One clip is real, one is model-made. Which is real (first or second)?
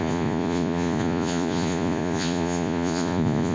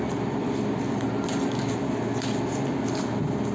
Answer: second